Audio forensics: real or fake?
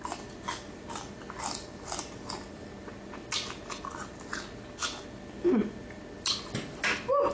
real